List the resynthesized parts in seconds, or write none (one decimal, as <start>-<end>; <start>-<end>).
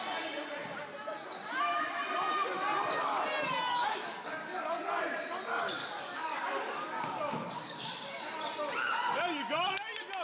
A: 3.8-5.0; 5.8-7.9